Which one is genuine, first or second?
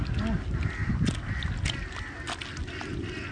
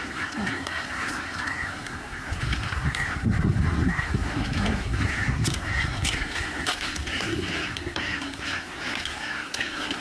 first